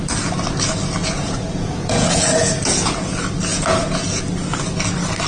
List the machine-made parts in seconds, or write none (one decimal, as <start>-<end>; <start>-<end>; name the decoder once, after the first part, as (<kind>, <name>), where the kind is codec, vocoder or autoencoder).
1.0-3.1 (vocoder, Vocos); 3.5-4.2